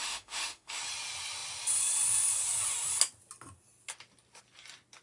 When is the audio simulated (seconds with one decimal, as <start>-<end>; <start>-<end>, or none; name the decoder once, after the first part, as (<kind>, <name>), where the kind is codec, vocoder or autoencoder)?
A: 0.0-0.8 (autoencoder, DAC-VAE)